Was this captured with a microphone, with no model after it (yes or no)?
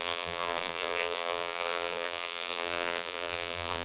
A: no